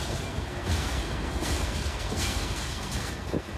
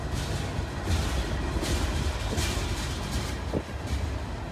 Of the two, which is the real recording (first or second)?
second